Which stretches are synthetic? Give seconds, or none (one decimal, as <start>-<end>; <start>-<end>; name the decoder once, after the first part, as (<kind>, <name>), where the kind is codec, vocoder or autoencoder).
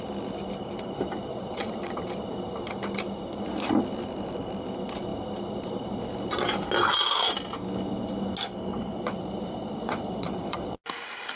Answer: 1.3-2.0 (vocoder, Vocos); 8.7-10.8